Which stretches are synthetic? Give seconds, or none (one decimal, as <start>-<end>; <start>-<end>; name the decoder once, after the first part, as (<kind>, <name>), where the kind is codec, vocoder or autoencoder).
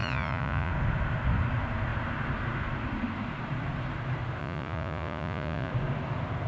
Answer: 0.0-0.7 (vocoder, Vocos); 4.4-5.7